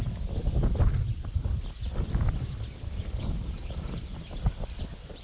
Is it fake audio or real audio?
real